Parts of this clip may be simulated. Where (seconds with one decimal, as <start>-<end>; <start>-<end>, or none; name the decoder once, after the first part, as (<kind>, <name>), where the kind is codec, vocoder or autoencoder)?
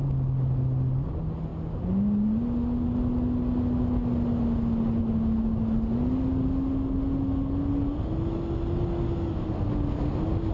none